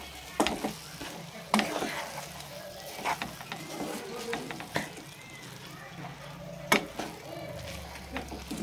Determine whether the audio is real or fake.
real